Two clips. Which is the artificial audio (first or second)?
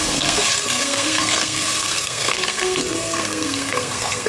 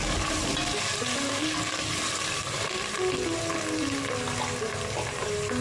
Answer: first